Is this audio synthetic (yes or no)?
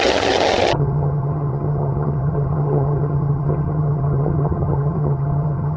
yes